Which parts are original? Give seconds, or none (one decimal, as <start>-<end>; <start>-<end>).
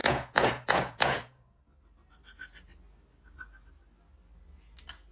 1.6-5.1